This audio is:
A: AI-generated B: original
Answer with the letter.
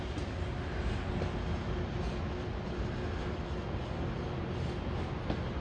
B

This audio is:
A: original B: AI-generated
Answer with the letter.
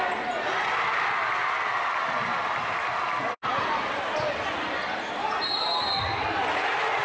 A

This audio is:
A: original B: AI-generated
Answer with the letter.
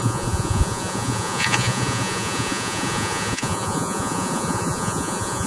B